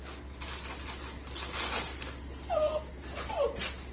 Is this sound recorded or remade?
recorded